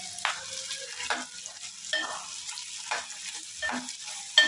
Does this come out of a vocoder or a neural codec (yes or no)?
no